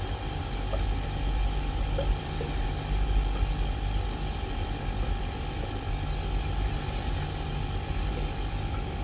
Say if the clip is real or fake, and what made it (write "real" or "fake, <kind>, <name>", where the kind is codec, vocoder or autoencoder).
real